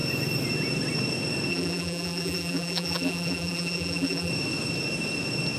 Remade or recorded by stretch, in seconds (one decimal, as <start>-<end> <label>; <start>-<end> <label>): 0.0-1.5 recorded; 1.5-4.3 remade; 4.3-5.6 recorded